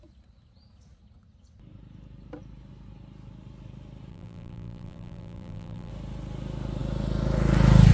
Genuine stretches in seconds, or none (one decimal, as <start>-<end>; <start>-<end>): 0.0-4.1; 5.9-7.9